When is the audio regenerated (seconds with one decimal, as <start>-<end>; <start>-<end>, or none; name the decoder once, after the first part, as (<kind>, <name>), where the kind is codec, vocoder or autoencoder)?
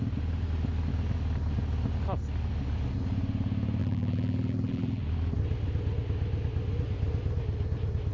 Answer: 3.8-5.0 (vocoder, BigVGAN v2)